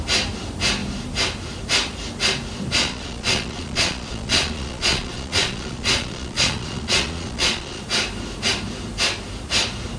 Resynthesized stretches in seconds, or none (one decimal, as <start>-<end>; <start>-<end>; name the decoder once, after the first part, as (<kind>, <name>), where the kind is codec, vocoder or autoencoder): 2.8-7.8 (vocoder, Vocos)